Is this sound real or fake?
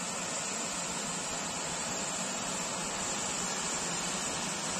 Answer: real